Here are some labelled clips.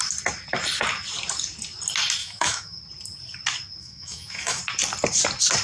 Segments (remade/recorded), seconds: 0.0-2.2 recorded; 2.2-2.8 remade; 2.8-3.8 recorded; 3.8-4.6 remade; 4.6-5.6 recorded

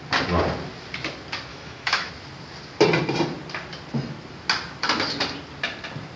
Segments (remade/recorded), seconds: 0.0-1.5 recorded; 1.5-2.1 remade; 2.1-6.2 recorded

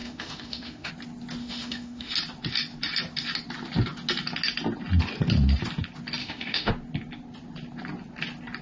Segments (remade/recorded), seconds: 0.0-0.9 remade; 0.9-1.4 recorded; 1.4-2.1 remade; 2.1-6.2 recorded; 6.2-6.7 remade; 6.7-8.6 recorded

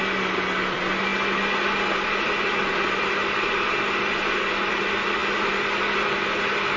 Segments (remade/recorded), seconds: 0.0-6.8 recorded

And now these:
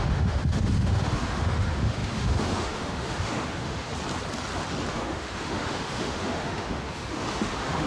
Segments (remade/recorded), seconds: 0.0-3.9 remade; 3.9-4.9 recorded; 4.9-7.9 remade